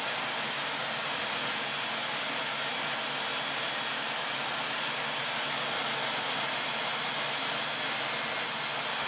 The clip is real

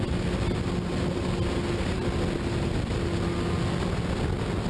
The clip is real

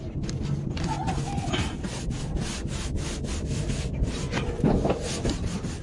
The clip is real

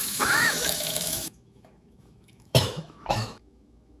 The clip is fake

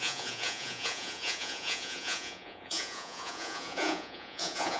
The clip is fake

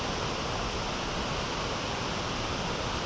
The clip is real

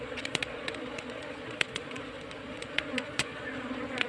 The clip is fake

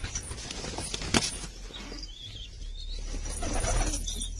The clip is real